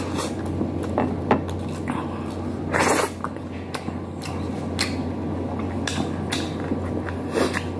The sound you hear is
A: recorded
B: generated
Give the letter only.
A